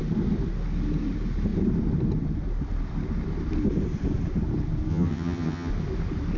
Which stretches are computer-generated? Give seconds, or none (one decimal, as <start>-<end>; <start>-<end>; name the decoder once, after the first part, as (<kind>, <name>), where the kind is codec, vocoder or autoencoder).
4.9-5.7 (vocoder, HiFi-GAN)